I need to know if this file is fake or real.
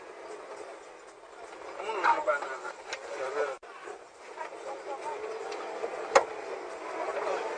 real